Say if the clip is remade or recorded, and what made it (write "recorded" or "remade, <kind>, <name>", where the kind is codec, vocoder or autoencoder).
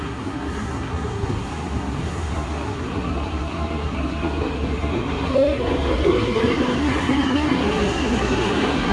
remade, codec, SNAC